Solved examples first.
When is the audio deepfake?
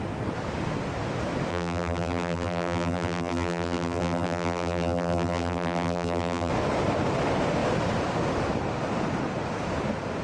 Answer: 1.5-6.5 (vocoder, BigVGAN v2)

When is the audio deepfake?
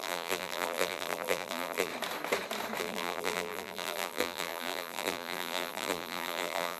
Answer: 0.0-1.9 (vocoder, BigVGAN v2); 2.8-6.8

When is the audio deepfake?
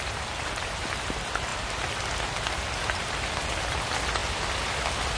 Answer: none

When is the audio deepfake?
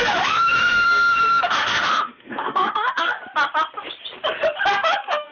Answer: 0.0-3.1 (autoencoder, DAC-VAE); 4.7-5.3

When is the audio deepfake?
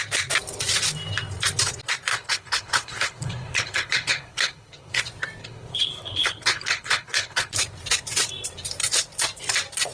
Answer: 2.1-5.0 (codec, HILCodec); 5.4-7.5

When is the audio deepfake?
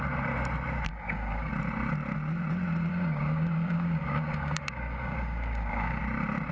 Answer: 0.9-1.5 (codec, DAC); 2.9-6.0